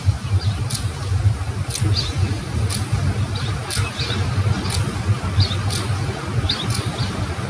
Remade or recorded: recorded